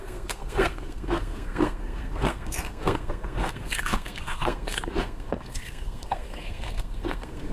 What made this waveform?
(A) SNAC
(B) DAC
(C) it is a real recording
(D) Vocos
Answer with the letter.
A